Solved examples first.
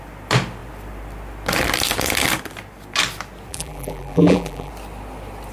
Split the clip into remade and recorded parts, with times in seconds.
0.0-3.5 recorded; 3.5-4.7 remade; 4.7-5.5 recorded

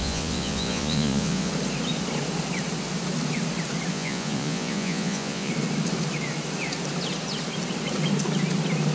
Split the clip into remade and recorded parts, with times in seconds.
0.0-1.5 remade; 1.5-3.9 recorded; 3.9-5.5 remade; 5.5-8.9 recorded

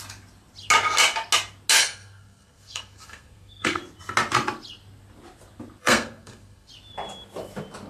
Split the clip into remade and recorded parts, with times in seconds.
0.0-1.8 recorded; 1.8-3.8 remade; 3.8-5.8 recorded; 5.8-6.7 remade; 6.7-7.9 recorded

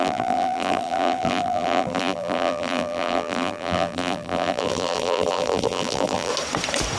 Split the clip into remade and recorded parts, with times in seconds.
0.0-6.3 remade; 6.3-7.0 recorded

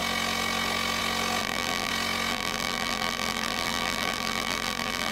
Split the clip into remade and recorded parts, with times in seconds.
0.0-1.4 recorded; 1.4-1.9 remade; 1.9-2.3 recorded; 2.3-5.1 remade

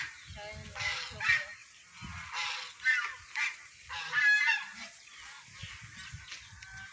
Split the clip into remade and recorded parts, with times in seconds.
0.0-6.9 recorded